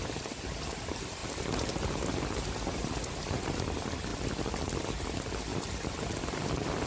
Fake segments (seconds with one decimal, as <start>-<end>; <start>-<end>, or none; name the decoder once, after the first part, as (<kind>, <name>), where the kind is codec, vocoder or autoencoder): 1.2-3.6 (vocoder, BigVGAN v2); 5.5-6.4